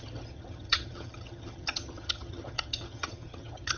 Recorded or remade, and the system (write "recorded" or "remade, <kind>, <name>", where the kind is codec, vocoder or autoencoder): remade, vocoder, HiFi-GAN